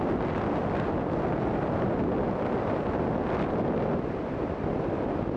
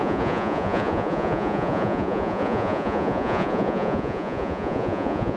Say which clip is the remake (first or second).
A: second